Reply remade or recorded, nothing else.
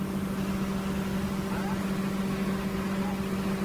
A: recorded